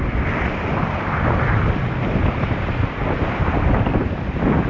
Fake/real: real